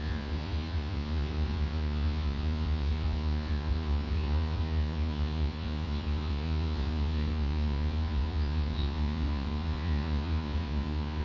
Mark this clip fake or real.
fake